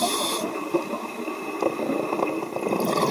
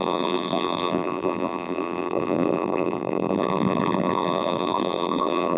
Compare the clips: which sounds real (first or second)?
first